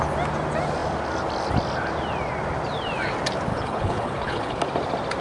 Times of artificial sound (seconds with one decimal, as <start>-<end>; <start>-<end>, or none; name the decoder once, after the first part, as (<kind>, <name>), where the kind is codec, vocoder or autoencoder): 3.5-4.6 (codec, HILCodec)